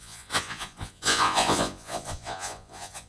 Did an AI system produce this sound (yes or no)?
yes